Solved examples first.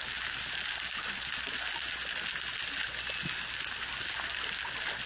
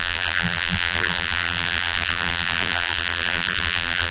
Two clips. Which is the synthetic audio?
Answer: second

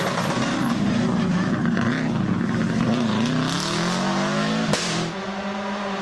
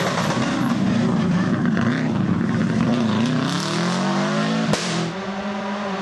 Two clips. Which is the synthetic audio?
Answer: second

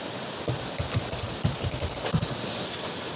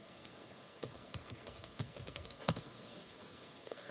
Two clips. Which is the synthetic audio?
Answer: second